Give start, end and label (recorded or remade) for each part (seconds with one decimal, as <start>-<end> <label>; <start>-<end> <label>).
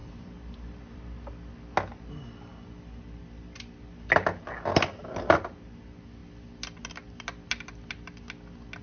0.0-1.0 remade; 1.0-8.8 recorded